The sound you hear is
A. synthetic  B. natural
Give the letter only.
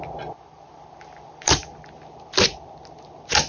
B